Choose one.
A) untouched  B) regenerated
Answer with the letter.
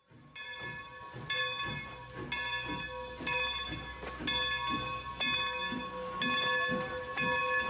A